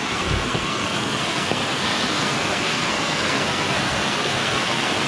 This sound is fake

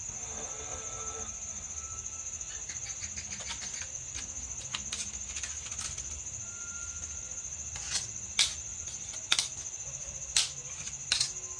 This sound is real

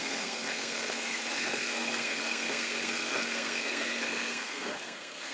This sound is fake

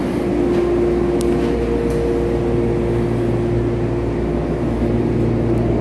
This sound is real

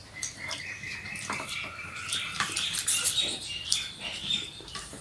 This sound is fake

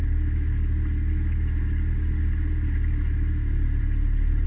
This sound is real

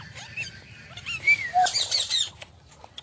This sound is fake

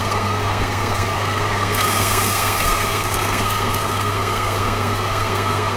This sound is fake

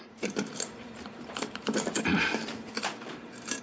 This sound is fake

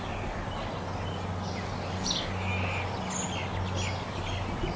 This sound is real